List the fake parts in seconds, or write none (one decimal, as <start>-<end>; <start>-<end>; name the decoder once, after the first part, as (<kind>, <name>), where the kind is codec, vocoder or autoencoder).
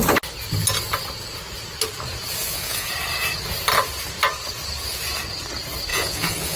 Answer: 2.4-2.9 (vocoder, Vocos); 5.9-6.6